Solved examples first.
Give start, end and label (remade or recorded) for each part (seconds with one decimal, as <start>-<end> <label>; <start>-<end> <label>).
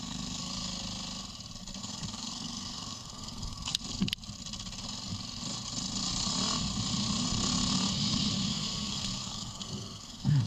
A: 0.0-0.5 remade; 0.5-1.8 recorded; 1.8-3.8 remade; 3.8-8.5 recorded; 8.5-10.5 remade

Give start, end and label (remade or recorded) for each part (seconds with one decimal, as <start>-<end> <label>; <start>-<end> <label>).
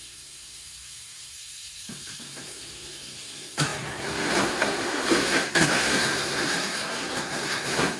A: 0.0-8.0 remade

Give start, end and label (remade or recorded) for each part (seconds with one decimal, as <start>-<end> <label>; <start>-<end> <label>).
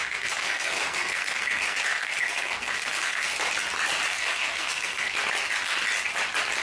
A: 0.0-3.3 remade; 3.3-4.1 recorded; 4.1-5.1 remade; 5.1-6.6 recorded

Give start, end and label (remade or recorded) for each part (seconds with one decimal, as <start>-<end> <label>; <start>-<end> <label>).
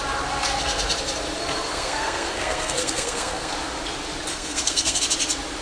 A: 0.0-1.7 recorded; 1.7-3.5 remade; 3.5-4.3 recorded; 4.3-5.0 remade; 5.0-5.6 recorded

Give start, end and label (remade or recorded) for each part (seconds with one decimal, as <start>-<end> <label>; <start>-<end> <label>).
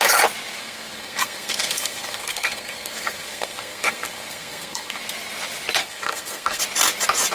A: 0.0-0.6 recorded; 0.6-5.0 remade; 5.0-5.8 recorded; 5.8-6.6 remade; 6.6-7.3 recorded